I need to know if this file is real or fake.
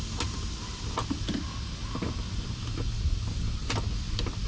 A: real